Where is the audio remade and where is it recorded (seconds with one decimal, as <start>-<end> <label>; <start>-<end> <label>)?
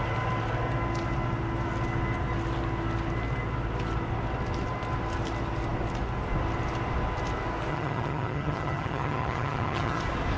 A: 0.0-7.7 recorded; 7.7-10.0 remade; 10.0-10.4 recorded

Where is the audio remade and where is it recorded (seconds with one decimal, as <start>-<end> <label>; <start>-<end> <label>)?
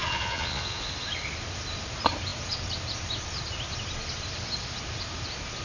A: 0.0-0.9 remade; 0.9-5.6 recorded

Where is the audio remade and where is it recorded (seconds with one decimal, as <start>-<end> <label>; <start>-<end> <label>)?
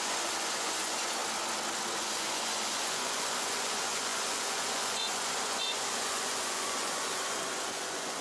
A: 0.0-1.2 remade; 1.2-2.0 recorded; 2.0-8.2 remade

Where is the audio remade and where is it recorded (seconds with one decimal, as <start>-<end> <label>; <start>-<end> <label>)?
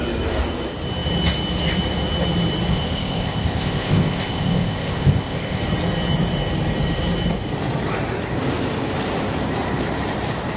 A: 0.0-2.7 recorded; 2.7-5.6 remade; 5.6-10.6 recorded